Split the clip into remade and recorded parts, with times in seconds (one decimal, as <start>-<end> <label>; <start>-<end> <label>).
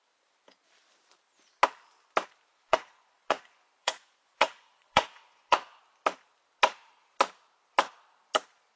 0.0-2.5 recorded; 2.5-5.8 remade; 5.8-8.8 recorded